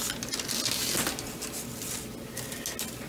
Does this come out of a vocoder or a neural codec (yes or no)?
no